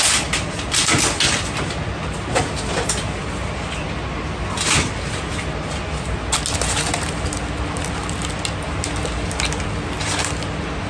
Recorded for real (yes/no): yes